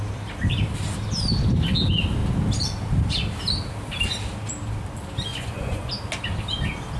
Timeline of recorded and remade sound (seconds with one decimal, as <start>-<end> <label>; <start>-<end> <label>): 0.0-5.3 recorded; 5.3-5.9 remade; 5.9-7.0 recorded